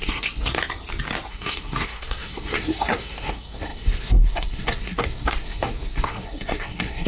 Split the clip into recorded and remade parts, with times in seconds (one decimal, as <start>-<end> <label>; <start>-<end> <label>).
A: 0.0-0.5 remade; 0.5-1.3 recorded; 1.3-7.1 remade

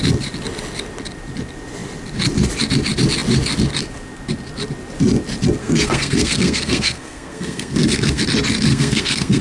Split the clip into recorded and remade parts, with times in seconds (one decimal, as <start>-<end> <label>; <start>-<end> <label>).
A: 0.0-5.6 recorded; 5.6-8.2 remade; 8.2-8.7 recorded; 8.7-9.4 remade